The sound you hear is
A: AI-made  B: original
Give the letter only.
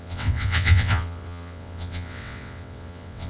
A